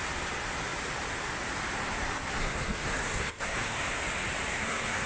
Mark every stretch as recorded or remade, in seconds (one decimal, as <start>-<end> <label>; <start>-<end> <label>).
0.0-2.4 recorded; 2.4-4.0 remade; 4.0-4.5 recorded; 4.5-5.1 remade